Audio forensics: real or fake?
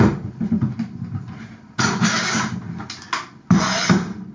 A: real